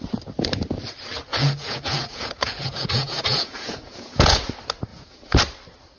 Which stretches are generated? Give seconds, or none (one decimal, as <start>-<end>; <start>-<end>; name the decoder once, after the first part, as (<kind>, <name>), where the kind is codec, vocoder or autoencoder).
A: 1.3-4.5 (vocoder, Vocos); 4.9-5.4